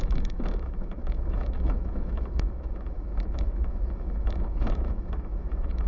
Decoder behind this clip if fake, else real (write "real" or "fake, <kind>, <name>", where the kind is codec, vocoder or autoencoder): fake, autoencoder, DAC-VAE